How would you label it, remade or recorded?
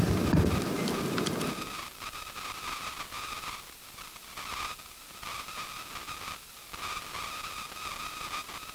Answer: remade